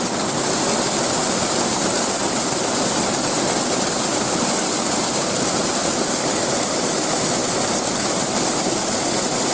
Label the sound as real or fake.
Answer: real